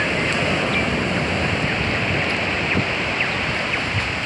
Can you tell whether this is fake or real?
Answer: real